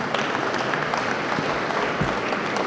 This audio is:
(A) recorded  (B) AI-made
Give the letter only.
A